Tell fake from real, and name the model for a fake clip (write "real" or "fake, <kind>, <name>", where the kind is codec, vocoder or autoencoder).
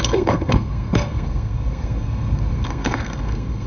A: fake, codec, SNAC